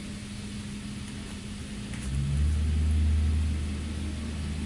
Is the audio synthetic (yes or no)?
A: no